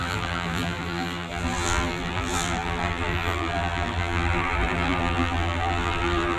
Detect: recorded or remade remade